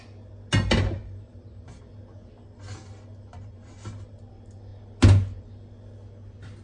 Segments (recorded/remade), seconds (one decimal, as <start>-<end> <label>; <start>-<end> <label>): 0.0-1.0 recorded; 1.0-1.8 remade; 1.8-3.3 recorded; 3.3-4.3 remade; 4.3-6.6 recorded